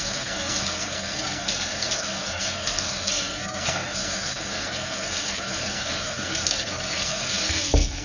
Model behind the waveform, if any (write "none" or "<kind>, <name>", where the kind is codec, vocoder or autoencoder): codec, SNAC